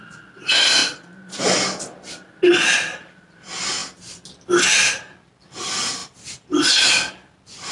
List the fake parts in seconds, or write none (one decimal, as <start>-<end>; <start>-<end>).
none